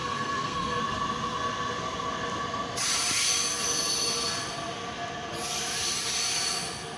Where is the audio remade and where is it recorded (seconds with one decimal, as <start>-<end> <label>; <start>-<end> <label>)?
0.0-0.8 remade; 0.8-7.0 recorded

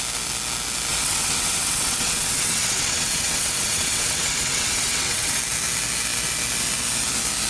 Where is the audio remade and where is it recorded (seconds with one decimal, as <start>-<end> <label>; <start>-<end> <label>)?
0.0-0.9 recorded; 0.9-5.4 remade; 5.4-7.5 recorded

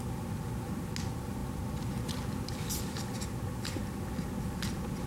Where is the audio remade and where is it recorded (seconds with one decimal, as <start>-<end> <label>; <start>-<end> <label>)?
0.0-5.1 recorded

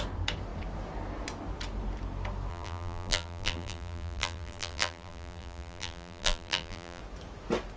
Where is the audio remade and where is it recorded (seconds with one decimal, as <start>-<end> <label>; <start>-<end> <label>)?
0.0-2.5 recorded; 2.5-7.0 remade; 7.0-7.8 recorded

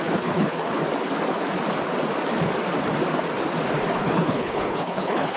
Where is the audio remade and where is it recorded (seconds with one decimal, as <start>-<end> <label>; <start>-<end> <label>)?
0.0-0.8 remade; 0.8-4.0 recorded; 4.0-5.4 remade

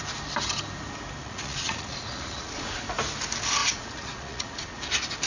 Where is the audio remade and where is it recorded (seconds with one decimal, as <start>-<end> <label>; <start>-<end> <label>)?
0.0-1.2 recorded; 1.2-2.8 remade; 2.8-3.6 recorded; 3.6-4.8 remade; 4.8-5.3 recorded

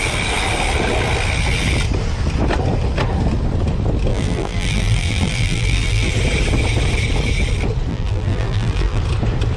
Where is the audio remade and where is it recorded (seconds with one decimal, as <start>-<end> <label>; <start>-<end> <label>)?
0.0-4.1 recorded; 4.1-6.1 remade; 6.1-7.9 recorded; 7.9-9.0 remade; 9.0-9.6 recorded

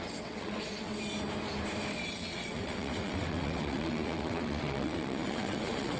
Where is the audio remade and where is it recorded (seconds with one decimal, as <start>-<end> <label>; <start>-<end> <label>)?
0.0-0.9 remade; 0.9-1.9 recorded; 1.9-6.0 remade